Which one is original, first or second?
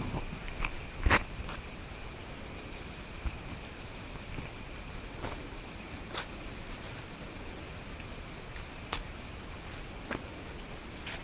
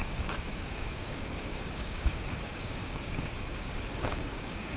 first